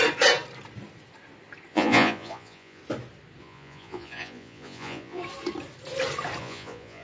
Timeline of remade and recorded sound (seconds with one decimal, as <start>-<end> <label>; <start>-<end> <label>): 0.0-1.7 recorded; 1.7-2.8 remade; 2.8-3.4 recorded; 3.4-5.2 remade; 5.2-6.4 recorded; 6.4-7.0 remade